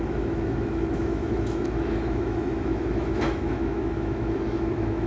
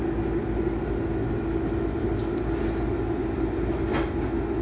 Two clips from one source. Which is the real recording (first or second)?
second